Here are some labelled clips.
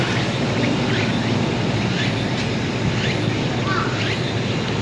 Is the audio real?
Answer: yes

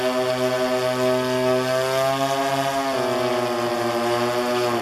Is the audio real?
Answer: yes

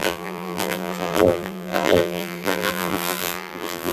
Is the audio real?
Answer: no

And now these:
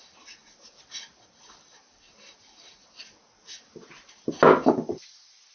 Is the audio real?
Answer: yes